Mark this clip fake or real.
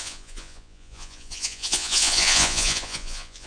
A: fake